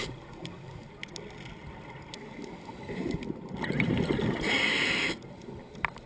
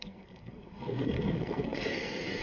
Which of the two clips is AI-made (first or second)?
second